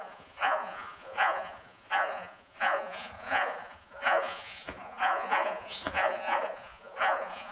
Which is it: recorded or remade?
remade